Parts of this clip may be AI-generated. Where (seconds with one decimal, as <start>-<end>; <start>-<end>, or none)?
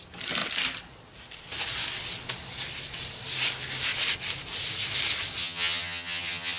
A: 5.4-6.6